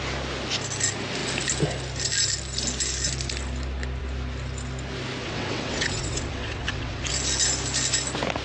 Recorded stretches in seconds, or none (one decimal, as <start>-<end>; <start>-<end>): 0.0-5.2; 7.1-8.4